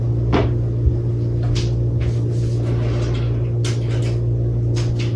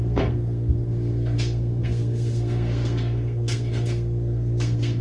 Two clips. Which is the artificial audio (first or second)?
second